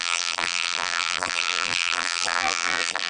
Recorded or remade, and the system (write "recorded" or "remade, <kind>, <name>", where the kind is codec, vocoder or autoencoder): remade, vocoder, BigVGAN v2